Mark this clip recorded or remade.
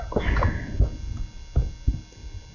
recorded